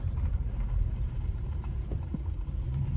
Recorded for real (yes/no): no